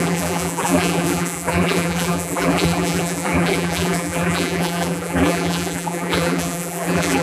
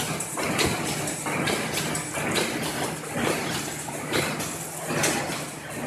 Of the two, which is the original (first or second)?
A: second